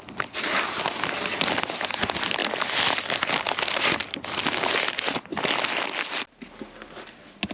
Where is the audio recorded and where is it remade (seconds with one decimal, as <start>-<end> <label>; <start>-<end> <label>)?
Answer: 0.0-7.5 recorded